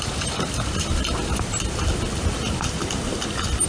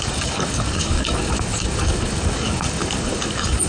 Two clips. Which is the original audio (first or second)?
first